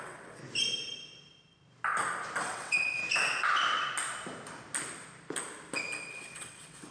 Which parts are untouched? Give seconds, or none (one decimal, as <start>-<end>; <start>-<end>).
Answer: 0.4-2.4; 3.0-6.1